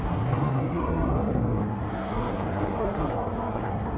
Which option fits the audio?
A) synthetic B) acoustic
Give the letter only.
A